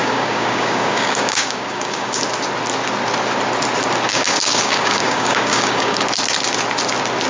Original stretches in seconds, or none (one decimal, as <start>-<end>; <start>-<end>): 2.2-4.1; 6.0-7.3